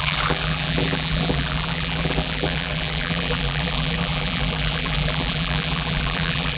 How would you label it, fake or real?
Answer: fake